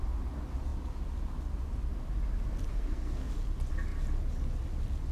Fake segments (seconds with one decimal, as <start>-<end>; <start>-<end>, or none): 2.7-3.3